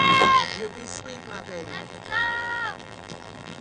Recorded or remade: remade